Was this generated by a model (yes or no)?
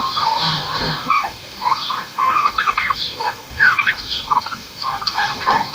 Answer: yes